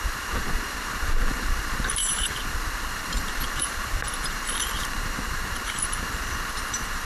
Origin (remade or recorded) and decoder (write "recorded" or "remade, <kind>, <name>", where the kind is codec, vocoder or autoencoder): remade, vocoder, BigVGAN v2